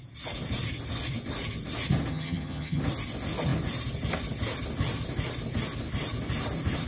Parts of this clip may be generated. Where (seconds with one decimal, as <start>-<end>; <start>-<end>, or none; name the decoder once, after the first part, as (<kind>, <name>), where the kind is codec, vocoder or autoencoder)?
2.1-2.8 (vocoder, HiFi-GAN)